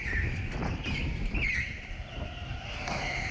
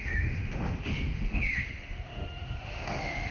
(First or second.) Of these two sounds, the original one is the first